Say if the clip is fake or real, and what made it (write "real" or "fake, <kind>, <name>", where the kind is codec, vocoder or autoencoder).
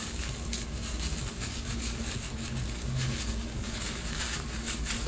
fake, codec, DAC